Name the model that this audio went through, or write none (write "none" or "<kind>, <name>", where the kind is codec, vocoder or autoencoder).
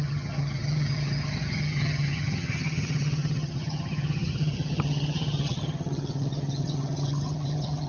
vocoder, HiFi-GAN